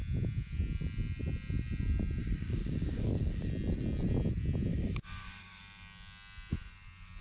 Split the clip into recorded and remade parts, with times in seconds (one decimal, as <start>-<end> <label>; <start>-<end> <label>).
0.0-2.2 recorded; 2.2-3.5 remade; 3.5-4.7 recorded; 4.7-5.6 remade; 5.6-7.2 recorded